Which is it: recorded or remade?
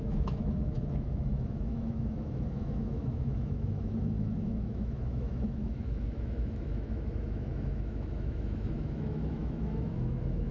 remade